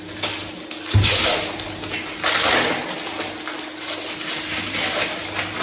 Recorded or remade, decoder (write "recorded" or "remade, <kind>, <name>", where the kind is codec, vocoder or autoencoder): recorded